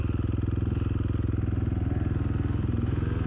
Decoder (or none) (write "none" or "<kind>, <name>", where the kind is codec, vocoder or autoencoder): none